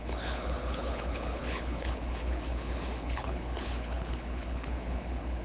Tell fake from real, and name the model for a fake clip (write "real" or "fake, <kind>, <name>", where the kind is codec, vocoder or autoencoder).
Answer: fake, codec, HILCodec